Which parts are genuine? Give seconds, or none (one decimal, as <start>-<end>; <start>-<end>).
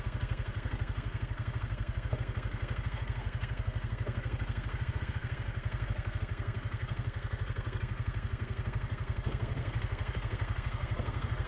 none